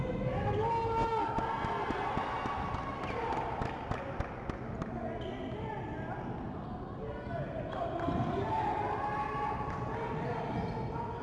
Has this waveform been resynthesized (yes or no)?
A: no